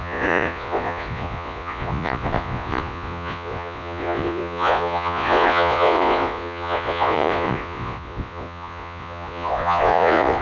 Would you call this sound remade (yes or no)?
yes